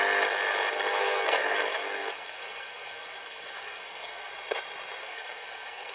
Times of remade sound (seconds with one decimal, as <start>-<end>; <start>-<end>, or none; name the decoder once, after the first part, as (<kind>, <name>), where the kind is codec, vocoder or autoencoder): 0.9-4.3 (codec, SNAC); 5.0-5.9